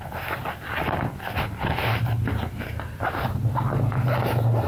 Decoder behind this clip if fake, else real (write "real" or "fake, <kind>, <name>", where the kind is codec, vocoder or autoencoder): real